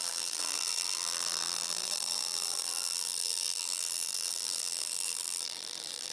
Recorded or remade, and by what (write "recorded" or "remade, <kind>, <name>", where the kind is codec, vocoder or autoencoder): remade, vocoder, BigVGAN v2